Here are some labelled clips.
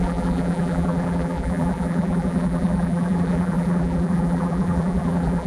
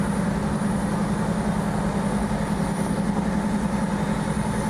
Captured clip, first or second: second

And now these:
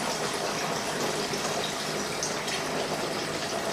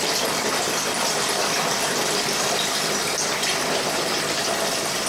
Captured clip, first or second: first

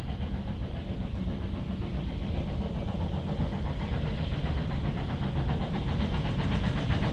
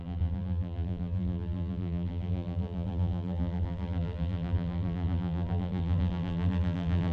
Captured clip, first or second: first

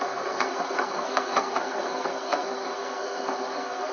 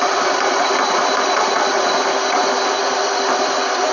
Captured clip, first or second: second